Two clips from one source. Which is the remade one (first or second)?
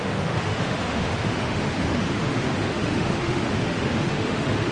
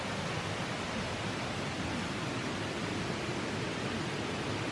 first